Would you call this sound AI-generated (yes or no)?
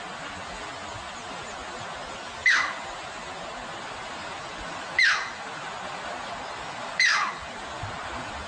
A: yes